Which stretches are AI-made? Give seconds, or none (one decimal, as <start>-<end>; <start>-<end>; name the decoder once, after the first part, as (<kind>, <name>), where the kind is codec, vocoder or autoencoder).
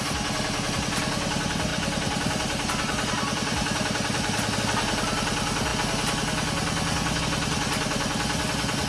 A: 1.7-4.6 (vocoder, BigVGAN v2)